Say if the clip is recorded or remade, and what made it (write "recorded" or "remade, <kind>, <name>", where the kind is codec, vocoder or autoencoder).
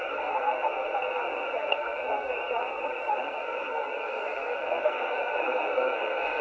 remade, codec, SNAC